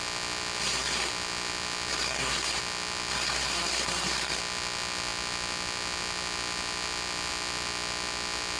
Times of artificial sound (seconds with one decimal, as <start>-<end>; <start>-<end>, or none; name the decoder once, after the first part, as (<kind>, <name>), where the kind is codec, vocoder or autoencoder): 0.6-1.1 (codec, SNAC); 1.9-2.6; 3.1-4.4